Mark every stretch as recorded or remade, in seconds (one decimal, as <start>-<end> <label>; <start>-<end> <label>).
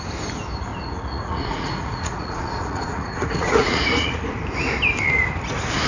0.0-0.7 recorded; 0.7-4.2 remade; 4.2-5.9 recorded